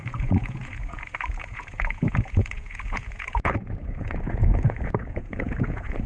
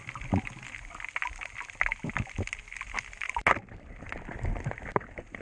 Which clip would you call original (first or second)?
second